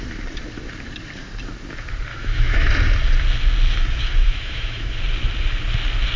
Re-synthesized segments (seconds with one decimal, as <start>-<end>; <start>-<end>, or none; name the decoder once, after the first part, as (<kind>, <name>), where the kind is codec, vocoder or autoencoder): 2.1-2.7 (autoencoder, DAC-VAE); 4.2-4.9

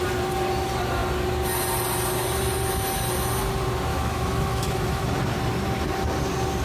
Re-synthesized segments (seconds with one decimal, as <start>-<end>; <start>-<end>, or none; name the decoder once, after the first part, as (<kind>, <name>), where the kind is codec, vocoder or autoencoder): 3.9-5.0 (autoencoder, DAC-VAE)

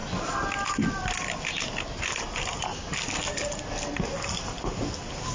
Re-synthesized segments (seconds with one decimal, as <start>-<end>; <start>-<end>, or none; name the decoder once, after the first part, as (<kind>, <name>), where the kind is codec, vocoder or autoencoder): none